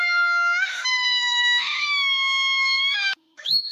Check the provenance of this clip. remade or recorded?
remade